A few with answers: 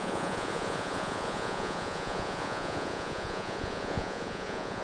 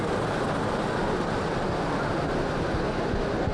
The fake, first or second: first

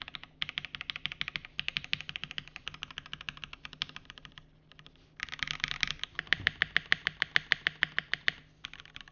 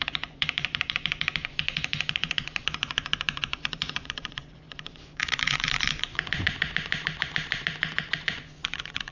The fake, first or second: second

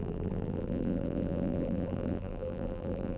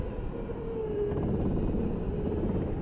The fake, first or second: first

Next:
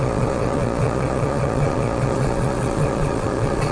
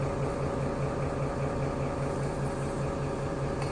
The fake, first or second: first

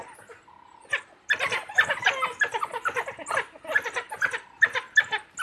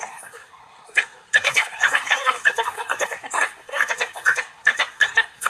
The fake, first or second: second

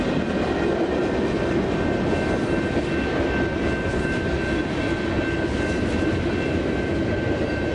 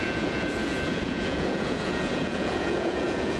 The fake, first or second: second